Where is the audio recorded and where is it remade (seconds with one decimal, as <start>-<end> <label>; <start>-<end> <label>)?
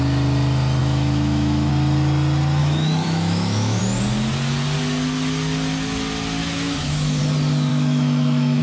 0.0-0.8 recorded; 0.8-1.7 remade; 1.7-2.6 recorded; 2.6-3.8 remade; 3.8-6.4 recorded; 6.4-7.2 remade; 7.2-7.7 recorded; 7.7-8.6 remade